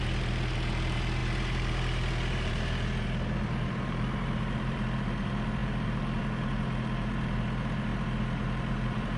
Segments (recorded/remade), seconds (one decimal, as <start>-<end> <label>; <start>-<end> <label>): 0.0-9.2 remade

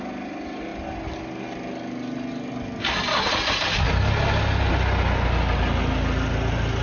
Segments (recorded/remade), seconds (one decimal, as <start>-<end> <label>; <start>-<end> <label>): 0.0-6.8 recorded

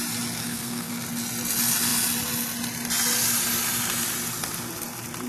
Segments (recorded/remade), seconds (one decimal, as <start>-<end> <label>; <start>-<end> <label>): 0.0-0.4 recorded; 0.4-0.9 remade; 0.9-5.3 recorded

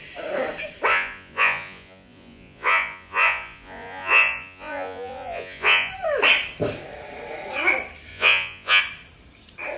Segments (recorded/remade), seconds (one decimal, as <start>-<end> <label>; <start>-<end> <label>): 0.0-0.9 recorded; 0.9-5.9 remade; 5.9-8.1 recorded; 8.1-8.8 remade; 8.8-9.8 recorded

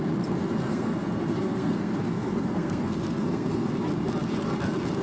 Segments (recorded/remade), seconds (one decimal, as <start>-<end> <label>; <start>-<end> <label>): 0.0-0.7 recorded; 0.7-3.7 remade; 3.7-5.0 recorded

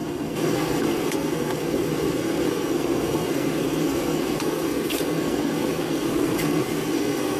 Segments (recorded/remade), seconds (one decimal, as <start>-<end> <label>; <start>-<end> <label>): 0.0-7.4 remade

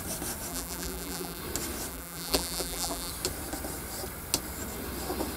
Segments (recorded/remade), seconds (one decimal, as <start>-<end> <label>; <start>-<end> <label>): 0.0-0.5 recorded; 0.5-1.4 remade; 1.4-1.9 recorded; 1.9-3.1 remade; 3.1-5.4 recorded